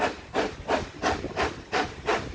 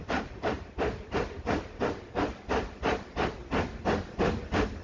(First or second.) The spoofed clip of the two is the second